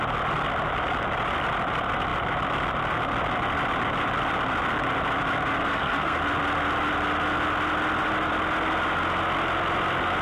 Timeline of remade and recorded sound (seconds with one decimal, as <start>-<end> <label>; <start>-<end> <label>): 0.0-5.7 recorded; 5.7-6.2 remade; 6.2-10.2 recorded